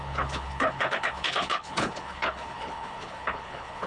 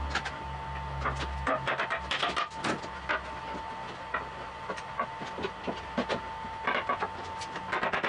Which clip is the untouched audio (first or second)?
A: second